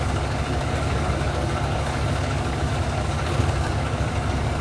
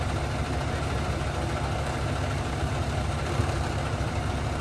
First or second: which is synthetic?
first